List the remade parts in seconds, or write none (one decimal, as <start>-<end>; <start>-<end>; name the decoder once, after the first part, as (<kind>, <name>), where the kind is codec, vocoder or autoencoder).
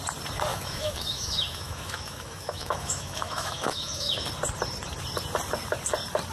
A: 0.5-4.3 (autoencoder, DAC-VAE)